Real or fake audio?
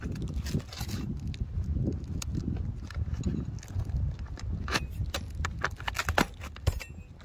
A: real